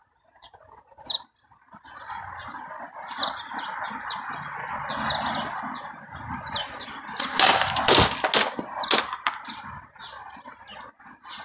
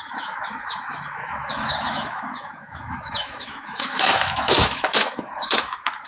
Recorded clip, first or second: first